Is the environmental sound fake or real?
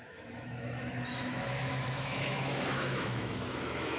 fake